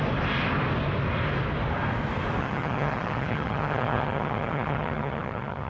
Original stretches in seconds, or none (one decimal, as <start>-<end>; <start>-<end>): 0.0-2.4